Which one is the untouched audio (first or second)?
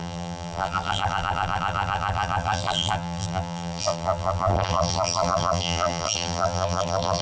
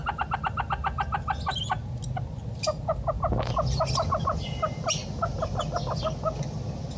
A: second